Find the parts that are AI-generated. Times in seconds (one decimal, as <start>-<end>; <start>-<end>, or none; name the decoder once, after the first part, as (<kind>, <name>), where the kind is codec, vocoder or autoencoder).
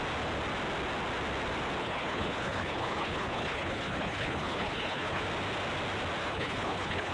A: 1.8-5.2 (codec, HILCodec); 6.2-7.1